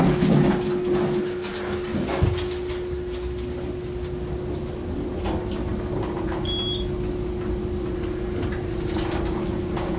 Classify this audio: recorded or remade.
recorded